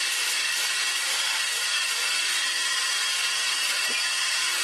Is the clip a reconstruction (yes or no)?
no